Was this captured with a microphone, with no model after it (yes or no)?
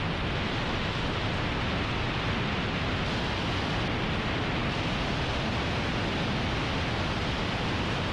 yes